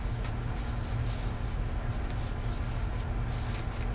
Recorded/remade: recorded